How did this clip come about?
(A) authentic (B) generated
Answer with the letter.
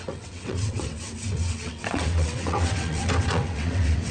B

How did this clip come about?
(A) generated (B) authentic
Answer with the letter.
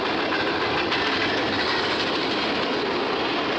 B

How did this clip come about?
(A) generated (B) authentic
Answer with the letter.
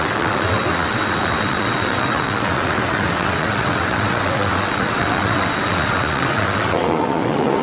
A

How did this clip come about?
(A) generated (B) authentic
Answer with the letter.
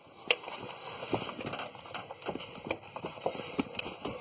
B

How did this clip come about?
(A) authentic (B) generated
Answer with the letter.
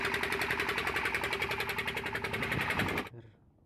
A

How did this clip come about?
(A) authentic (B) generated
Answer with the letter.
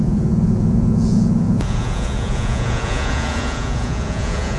B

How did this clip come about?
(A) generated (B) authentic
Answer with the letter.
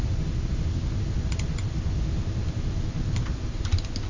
B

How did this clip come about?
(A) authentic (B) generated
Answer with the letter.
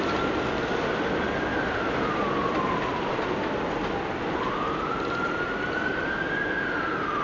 A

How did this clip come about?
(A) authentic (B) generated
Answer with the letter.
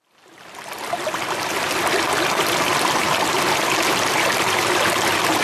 A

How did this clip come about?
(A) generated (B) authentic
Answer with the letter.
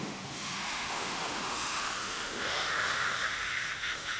A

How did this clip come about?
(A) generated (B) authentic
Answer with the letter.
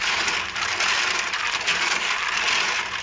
B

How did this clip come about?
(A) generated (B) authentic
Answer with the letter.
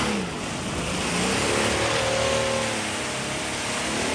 B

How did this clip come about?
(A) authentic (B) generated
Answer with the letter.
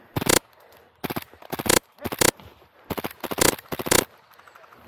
A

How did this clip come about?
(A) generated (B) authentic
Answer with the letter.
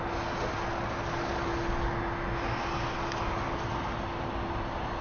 B